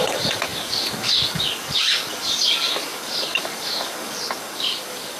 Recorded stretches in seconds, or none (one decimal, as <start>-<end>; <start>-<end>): none